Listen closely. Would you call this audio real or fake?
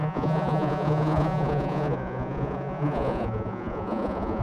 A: fake